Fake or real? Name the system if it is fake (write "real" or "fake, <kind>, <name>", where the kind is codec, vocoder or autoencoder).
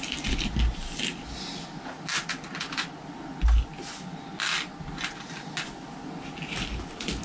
real